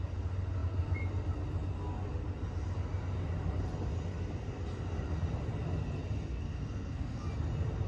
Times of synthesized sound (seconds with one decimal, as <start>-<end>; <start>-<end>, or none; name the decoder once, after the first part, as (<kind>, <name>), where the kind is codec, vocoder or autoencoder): 6.3-7.2 (codec, SNAC)